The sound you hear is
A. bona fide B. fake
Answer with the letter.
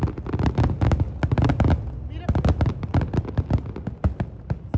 A